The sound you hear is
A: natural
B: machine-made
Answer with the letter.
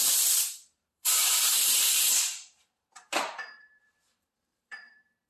B